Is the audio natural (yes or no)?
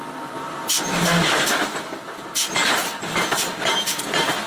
yes